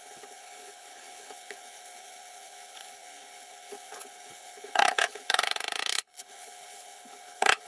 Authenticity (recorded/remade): remade